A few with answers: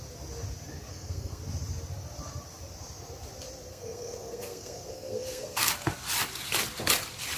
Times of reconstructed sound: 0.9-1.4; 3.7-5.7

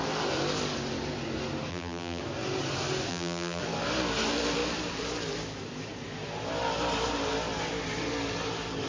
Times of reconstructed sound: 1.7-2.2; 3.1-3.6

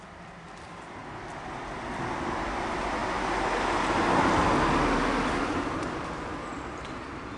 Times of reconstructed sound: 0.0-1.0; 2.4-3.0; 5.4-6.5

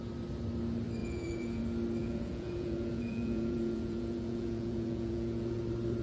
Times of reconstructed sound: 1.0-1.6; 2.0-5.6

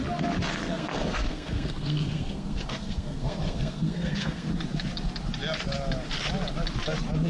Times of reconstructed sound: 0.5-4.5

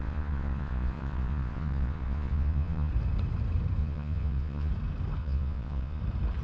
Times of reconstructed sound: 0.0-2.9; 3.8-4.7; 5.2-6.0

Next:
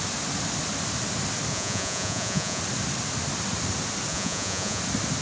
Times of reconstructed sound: 1.5-2.6; 4.1-4.8